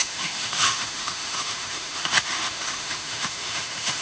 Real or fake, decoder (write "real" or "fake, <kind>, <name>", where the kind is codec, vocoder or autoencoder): fake, autoencoder, DAC-VAE